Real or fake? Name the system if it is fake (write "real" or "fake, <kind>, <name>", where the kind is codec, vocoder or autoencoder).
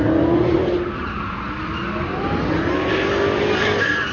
real